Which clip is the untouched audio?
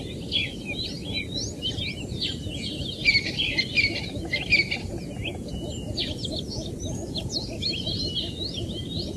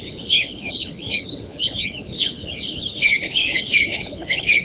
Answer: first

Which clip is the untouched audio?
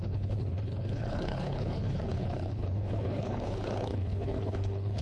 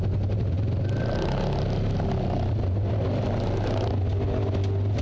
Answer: second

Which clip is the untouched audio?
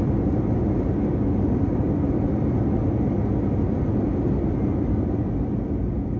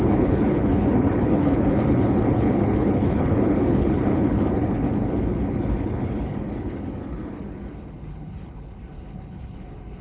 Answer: first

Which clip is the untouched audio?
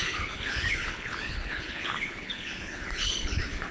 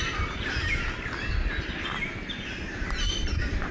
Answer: second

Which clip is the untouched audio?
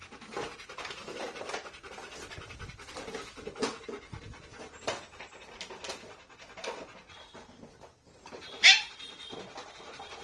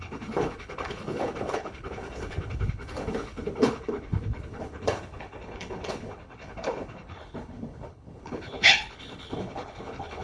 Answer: first